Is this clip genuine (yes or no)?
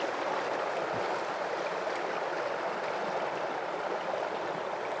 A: yes